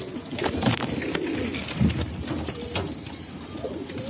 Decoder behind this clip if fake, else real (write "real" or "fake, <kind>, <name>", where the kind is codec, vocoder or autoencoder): real